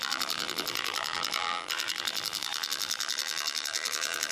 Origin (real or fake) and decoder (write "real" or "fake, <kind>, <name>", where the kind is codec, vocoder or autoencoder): fake, vocoder, BigVGAN v2